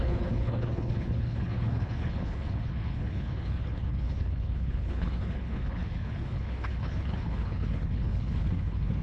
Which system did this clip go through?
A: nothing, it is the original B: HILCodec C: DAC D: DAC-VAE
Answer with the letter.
B